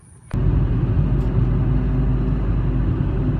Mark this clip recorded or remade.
recorded